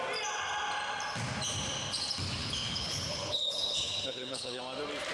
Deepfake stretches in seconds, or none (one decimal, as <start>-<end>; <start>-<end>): 2.4-4.6